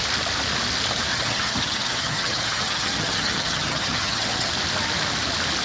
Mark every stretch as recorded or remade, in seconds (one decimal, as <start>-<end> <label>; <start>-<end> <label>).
0.0-1.1 recorded; 1.1-4.5 remade; 4.5-5.6 recorded